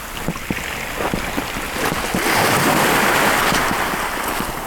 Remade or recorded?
recorded